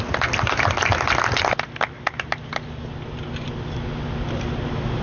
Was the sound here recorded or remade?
recorded